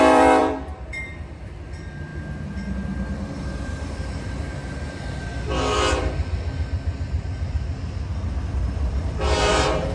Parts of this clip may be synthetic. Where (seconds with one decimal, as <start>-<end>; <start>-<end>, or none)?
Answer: 0.0-2.1; 3.3-4.6; 8.5-9.9